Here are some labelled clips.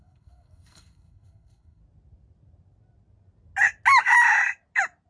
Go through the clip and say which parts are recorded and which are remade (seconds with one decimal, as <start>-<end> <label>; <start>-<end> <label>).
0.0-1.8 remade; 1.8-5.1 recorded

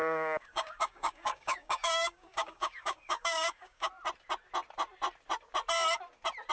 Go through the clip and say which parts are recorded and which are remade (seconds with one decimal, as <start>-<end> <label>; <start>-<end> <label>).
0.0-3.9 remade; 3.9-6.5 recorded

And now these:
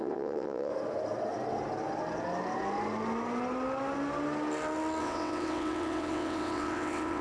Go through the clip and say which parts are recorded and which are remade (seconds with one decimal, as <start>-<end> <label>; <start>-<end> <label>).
0.0-0.7 remade; 0.7-5.0 recorded; 5.0-7.2 remade

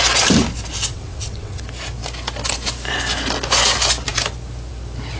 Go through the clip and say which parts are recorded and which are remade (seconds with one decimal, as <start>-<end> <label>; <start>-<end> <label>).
0.0-0.9 recorded; 0.9-1.6 remade; 1.6-5.2 recorded